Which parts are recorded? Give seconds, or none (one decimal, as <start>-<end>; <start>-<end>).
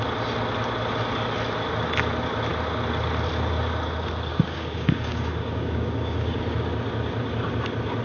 0.0-4.3; 6.4-8.0